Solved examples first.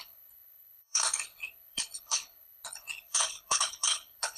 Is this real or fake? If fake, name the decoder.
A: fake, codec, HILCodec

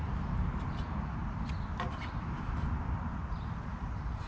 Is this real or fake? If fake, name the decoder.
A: real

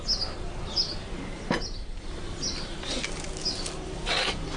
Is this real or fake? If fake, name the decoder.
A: real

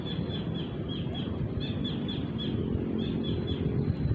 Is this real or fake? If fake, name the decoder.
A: real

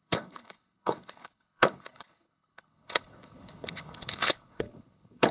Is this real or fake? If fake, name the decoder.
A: fake, codec, HILCodec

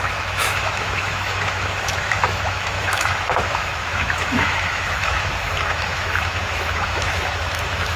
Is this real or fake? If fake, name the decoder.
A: fake, autoencoder, DAC-VAE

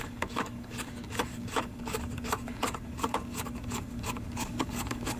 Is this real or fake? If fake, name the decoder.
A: fake, codec, DAC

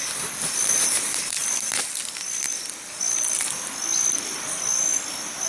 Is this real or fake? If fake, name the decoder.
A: real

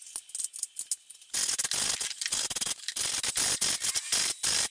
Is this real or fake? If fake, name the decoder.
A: real